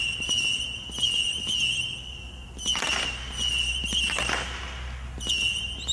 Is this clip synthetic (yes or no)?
no